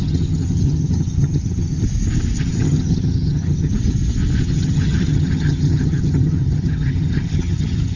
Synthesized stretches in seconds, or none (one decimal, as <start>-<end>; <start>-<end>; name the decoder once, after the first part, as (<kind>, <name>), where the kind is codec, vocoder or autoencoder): 0.0-1.8 (vocoder, HiFi-GAN); 2.4-3.7; 4.4-8.0